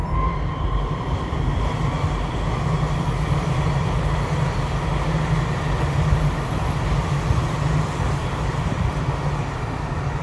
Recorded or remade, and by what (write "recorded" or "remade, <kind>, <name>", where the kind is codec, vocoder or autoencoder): remade, vocoder, BigVGAN v2